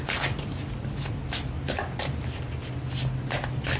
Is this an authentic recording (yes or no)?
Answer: yes